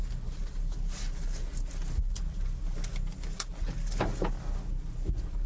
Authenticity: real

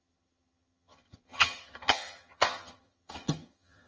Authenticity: fake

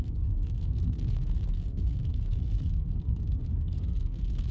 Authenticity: fake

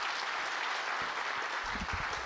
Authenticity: real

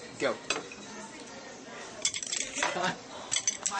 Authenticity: real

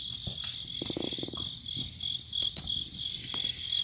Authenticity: real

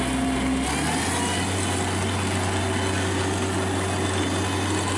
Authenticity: real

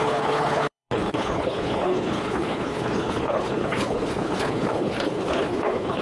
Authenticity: fake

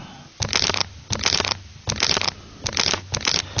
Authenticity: real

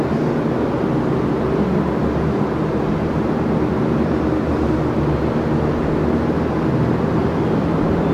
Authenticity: real